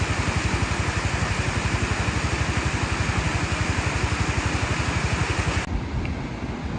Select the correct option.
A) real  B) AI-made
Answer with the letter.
A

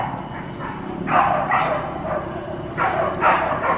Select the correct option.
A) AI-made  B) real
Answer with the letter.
B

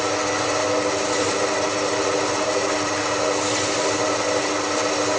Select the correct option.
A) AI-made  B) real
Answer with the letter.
B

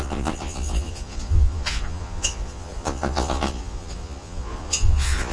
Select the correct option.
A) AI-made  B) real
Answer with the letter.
A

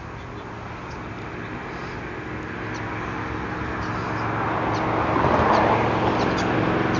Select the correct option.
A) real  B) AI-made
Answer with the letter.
A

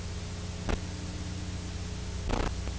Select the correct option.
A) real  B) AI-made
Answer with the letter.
A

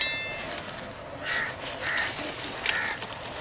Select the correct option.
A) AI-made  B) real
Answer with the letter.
B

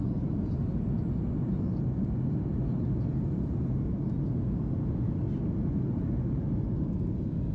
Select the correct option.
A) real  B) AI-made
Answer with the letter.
A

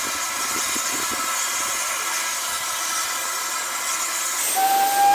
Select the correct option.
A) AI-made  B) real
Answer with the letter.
B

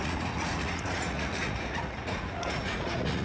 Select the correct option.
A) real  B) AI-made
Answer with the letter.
B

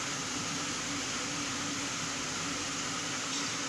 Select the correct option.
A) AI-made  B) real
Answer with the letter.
B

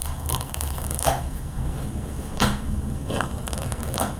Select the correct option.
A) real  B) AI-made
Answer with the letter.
B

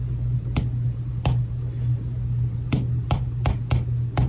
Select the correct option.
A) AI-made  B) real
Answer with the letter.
B